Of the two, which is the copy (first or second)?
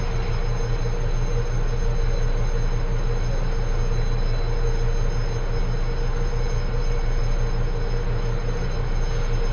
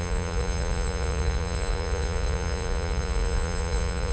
second